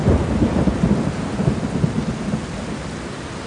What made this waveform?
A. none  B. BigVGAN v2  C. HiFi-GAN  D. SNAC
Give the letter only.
A